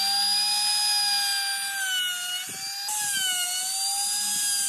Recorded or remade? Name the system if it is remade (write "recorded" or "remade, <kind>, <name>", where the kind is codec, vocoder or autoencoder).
recorded